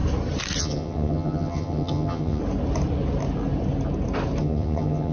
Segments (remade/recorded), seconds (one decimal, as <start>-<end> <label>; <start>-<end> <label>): 0.0-0.6 recorded; 0.6-2.4 remade; 2.4-4.4 recorded; 4.4-5.1 remade